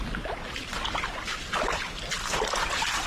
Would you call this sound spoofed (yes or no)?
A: no